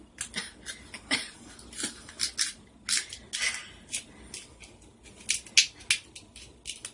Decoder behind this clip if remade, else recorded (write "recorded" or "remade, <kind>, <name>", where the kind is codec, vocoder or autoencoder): recorded